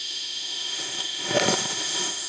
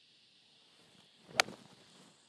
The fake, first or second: first